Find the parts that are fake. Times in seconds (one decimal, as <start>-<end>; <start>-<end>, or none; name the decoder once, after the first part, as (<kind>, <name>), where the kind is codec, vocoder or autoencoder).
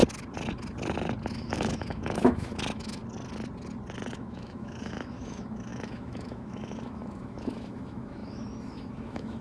1.3-3.0 (autoencoder, DAC-VAE); 4.1-9.4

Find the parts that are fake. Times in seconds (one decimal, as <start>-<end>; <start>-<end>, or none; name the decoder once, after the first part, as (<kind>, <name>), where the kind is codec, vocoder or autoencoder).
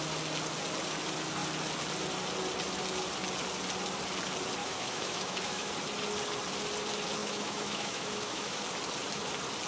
4.6-5.7 (autoencoder, DAC-VAE); 7.2-8.6